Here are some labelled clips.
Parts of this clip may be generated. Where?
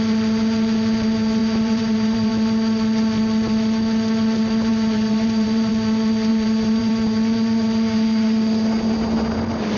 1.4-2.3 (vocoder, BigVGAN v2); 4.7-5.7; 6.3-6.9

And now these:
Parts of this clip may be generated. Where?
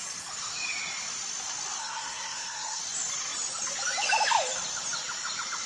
1.8-2.8 (codec, SNAC)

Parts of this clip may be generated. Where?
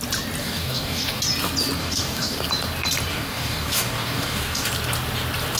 0.4-1.2 (codec, DAC); 1.8-2.4; 3.1-4.7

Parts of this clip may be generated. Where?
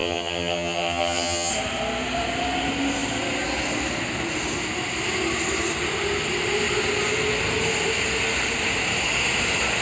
0.0-1.5 (vocoder, HiFi-GAN)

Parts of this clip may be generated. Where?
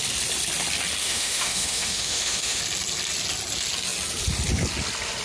1.0-2.6 (autoencoder, DAC-VAE)